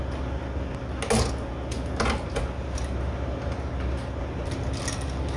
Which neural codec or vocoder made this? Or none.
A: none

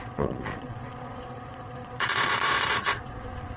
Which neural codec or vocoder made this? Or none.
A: vocoder, Vocos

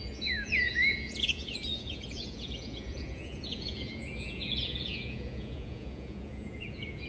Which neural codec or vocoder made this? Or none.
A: vocoder, Vocos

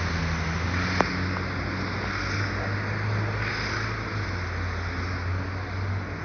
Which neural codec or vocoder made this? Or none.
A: none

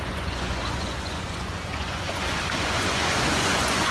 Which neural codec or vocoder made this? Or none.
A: vocoder, Vocos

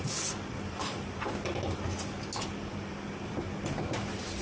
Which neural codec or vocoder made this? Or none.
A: none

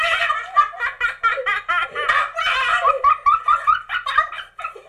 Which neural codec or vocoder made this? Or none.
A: none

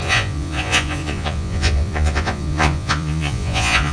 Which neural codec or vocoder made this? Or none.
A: vocoder, Vocos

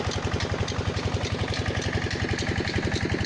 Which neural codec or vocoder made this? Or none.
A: none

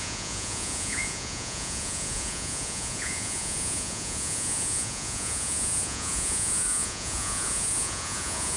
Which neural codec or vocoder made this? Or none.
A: vocoder, Vocos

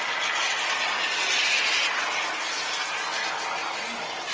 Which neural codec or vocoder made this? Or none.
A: none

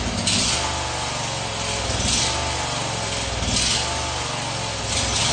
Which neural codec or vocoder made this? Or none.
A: none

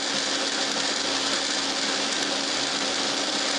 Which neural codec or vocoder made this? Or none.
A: none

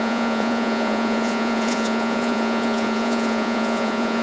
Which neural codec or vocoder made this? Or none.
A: vocoder, Vocos